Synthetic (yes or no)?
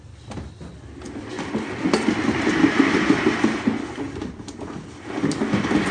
no